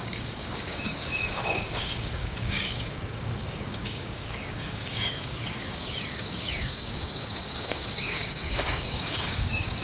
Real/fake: fake